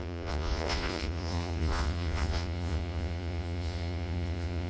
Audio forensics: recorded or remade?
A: remade